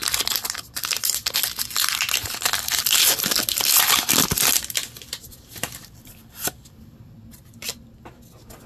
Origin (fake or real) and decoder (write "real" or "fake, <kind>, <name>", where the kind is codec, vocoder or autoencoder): real